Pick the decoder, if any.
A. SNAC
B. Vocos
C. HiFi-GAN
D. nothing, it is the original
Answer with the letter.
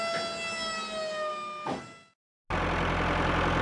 D